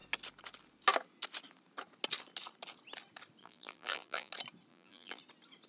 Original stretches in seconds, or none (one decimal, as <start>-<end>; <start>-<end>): 0.0-3.4; 4.3-4.7; 5.2-5.7